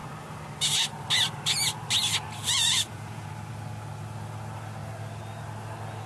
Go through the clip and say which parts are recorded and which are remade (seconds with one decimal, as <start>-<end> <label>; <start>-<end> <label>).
0.0-2.4 recorded; 2.4-3.3 remade; 3.3-6.1 recorded